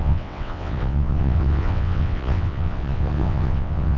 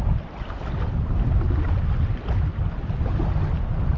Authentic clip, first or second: second